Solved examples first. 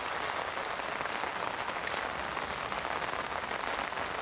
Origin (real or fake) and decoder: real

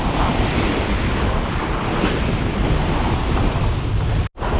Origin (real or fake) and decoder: real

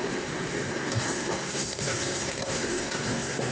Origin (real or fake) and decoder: fake, codec, SNAC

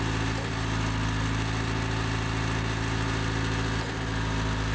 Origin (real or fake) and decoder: real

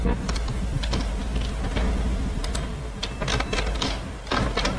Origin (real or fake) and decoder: real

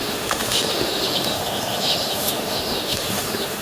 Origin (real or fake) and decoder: fake, autoencoder, DAC-VAE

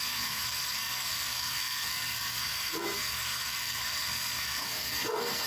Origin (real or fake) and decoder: fake, codec, SNAC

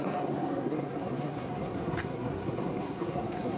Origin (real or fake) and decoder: fake, codec, SNAC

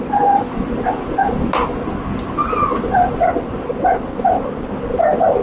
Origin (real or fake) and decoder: real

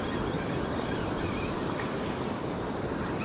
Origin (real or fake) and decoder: real